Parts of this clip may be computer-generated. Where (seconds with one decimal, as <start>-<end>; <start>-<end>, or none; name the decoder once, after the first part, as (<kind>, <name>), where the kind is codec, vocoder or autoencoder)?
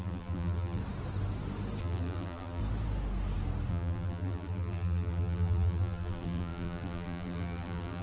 0.0-0.8 (vocoder, BigVGAN v2); 1.8-2.6; 3.7-8.0